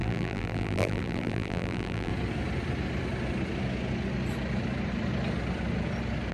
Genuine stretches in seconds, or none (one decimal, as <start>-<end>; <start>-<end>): 2.1-6.3